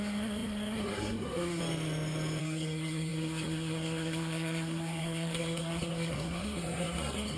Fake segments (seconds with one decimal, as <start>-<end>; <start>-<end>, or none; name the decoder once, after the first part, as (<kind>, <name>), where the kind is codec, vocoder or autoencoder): 0.0-1.6 (codec, SNAC); 2.4-7.4